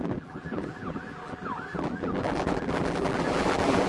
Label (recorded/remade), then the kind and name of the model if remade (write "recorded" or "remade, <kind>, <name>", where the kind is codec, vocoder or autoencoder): remade, vocoder, BigVGAN v2